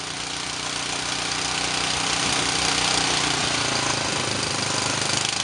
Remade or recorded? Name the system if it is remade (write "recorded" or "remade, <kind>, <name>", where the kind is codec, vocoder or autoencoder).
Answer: recorded